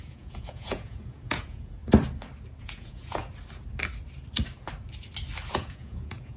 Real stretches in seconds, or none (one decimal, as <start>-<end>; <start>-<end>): 1.8-2.6; 3.2-5.5